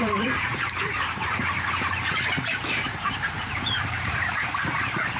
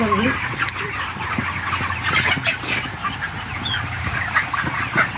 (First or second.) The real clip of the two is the second